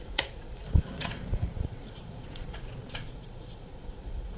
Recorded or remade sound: remade